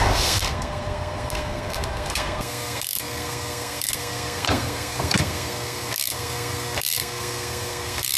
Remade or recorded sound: remade